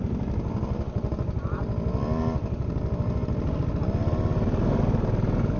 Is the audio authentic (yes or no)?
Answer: yes